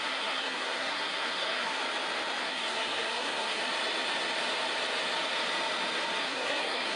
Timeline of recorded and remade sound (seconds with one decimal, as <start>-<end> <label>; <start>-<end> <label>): 0.0-1.8 remade; 1.8-2.4 recorded; 2.4-3.6 remade; 3.6-6.2 recorded; 6.2-7.0 remade